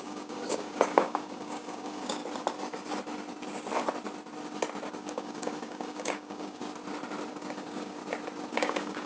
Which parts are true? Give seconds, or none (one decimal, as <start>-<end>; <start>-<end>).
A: 2.2-4.9; 6.6-7.3; 8.0-8.5